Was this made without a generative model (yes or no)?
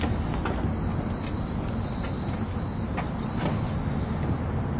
yes